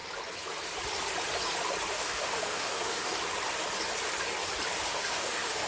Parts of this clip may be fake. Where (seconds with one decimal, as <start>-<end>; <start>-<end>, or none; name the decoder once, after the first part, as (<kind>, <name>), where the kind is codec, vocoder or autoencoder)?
1.9-3.2 (autoencoder, DAC-VAE); 4.8-5.7